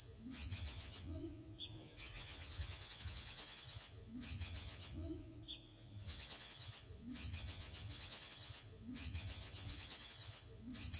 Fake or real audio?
fake